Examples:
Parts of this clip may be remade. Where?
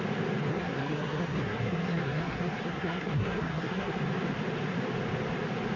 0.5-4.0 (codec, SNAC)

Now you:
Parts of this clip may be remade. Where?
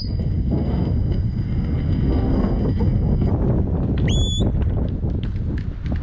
0.0-3.3 (codec, SNAC)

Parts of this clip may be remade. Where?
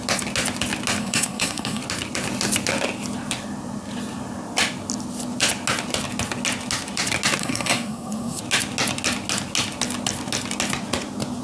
1.0-1.8 (codec, SNAC); 7.4-8.4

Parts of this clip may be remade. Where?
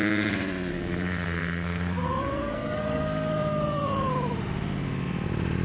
0.7-4.1 (codec, SNAC)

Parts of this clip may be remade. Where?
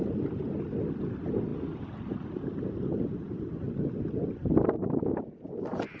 none